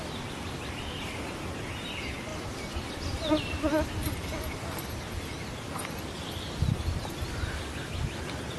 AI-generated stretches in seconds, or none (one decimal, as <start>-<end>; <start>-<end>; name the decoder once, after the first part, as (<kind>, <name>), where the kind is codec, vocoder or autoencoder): none